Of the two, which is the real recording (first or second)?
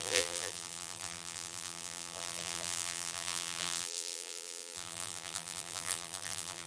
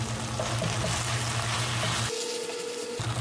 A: second